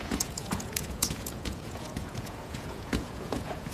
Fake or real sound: fake